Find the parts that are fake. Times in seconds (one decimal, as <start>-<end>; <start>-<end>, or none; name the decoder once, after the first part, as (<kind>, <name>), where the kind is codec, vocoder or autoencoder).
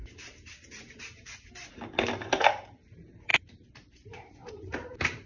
0.0-1.6 (vocoder, BigVGAN v2); 2.4-5.3